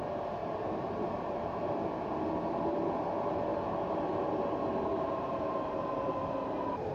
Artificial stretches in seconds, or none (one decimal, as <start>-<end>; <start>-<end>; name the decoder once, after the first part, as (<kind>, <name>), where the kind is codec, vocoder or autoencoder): 0.4-1.9 (vocoder, BigVGAN v2); 4.9-6.9